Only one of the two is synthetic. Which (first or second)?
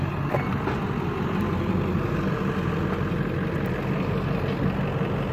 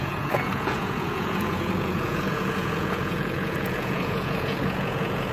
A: second